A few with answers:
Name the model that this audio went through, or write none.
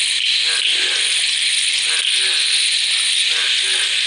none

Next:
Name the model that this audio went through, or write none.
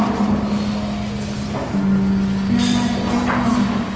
none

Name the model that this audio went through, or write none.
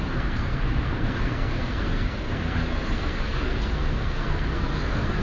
codec, SNAC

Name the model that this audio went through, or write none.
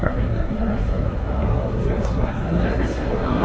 codec, SNAC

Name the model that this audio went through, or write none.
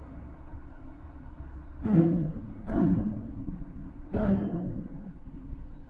codec, SNAC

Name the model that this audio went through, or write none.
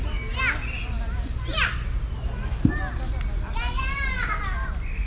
none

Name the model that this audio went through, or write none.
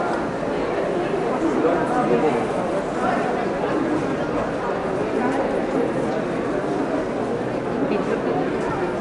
none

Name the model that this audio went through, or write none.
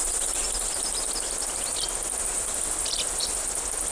vocoder, BigVGAN v2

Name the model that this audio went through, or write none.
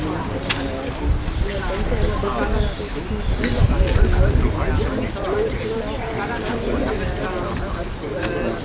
none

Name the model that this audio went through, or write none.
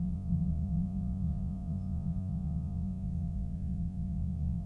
vocoder, Vocos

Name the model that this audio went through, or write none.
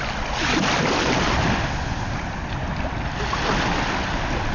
none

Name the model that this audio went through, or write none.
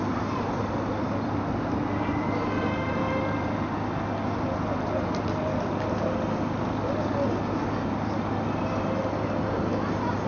none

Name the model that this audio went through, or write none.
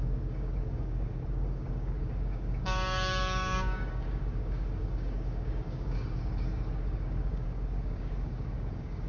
codec, DAC